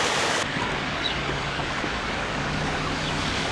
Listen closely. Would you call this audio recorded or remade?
remade